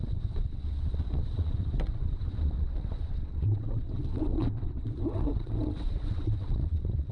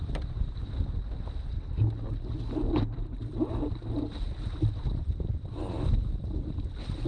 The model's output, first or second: first